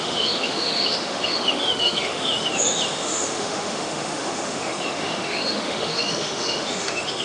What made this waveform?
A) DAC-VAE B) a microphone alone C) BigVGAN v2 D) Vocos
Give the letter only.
A